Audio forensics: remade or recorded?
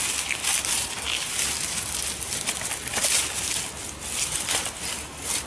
recorded